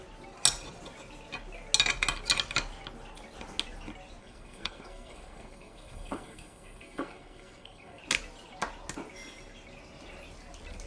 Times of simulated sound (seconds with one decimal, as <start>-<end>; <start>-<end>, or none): 4.2-8.0